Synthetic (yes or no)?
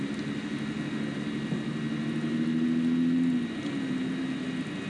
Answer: no